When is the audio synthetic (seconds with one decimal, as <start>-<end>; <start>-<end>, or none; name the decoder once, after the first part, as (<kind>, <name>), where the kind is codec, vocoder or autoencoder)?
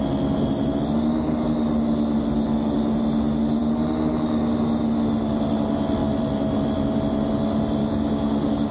7.8-8.7 (codec, DAC)